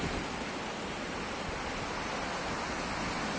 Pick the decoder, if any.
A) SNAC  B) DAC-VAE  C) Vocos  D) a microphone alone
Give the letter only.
D